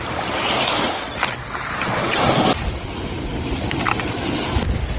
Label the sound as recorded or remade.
recorded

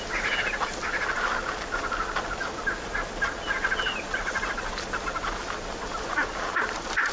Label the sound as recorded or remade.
recorded